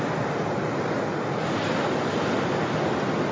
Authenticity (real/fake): real